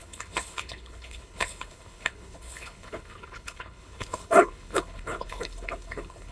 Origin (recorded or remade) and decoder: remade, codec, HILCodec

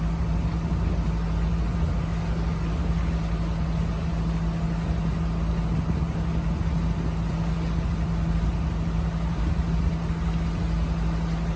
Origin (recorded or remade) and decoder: recorded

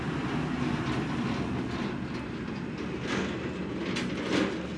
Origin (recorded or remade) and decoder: recorded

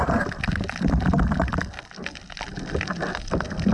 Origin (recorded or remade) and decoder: recorded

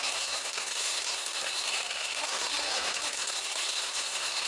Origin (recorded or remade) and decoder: remade, codec, SNAC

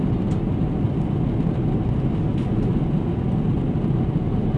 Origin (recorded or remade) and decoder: recorded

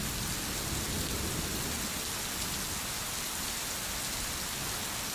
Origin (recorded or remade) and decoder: recorded